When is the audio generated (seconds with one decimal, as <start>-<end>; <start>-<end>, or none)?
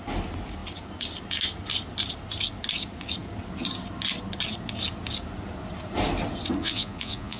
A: 6.6-7.4